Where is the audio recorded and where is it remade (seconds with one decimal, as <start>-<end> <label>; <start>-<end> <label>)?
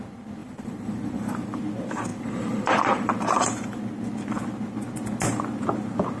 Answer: 0.0-0.4 recorded; 0.4-1.6 remade; 1.6-2.1 recorded; 2.1-3.8 remade; 3.8-6.2 recorded